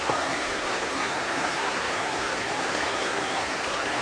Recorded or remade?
remade